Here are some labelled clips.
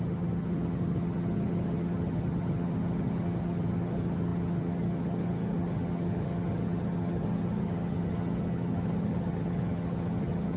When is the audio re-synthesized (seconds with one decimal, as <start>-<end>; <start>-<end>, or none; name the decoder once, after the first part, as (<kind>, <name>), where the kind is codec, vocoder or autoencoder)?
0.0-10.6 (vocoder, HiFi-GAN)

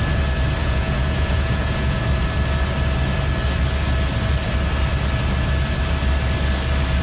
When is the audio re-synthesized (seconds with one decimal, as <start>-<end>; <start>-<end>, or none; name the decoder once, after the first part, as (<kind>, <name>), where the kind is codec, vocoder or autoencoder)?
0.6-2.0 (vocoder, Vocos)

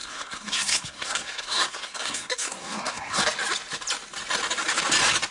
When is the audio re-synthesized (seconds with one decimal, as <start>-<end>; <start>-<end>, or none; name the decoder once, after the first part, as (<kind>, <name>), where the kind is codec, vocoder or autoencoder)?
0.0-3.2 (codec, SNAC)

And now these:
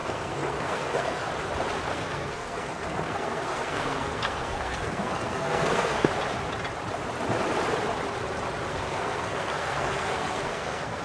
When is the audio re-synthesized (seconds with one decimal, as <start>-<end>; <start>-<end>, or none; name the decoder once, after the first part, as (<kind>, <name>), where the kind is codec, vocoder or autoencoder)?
0.0-1.3 (codec, SNAC); 1.9-6.1; 8.7-11.0